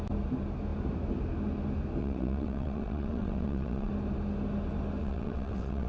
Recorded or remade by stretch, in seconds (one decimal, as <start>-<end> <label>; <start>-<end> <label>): 0.0-2.0 recorded; 2.0-3.9 remade; 3.9-5.0 recorded; 5.0-5.9 remade